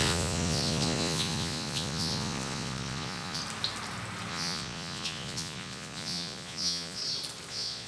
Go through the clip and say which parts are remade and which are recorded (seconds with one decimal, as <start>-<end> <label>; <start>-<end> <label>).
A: 0.0-3.4 remade; 3.4-4.3 recorded; 4.3-7.0 remade; 7.0-7.5 recorded; 7.5-7.9 remade